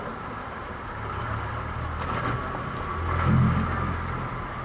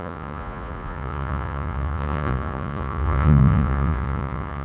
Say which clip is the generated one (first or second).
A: second